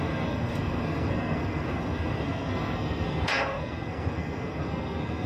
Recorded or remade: remade